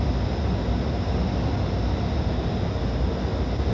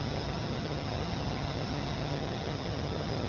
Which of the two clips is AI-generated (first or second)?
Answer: second